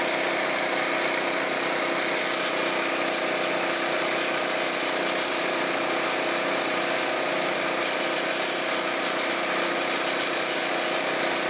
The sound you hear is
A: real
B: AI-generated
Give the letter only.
A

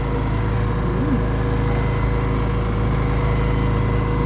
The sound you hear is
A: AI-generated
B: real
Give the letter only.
B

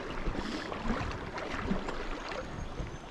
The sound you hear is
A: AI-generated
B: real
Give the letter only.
B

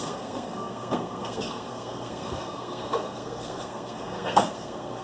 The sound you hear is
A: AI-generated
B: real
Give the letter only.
A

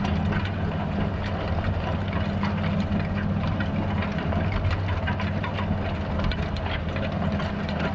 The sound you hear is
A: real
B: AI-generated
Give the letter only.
A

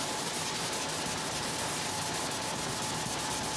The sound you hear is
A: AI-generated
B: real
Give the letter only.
B